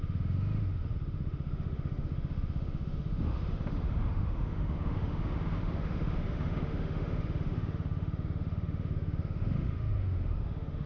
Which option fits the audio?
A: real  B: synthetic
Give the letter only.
B